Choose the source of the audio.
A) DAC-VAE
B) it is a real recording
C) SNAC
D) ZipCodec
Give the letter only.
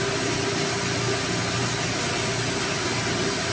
B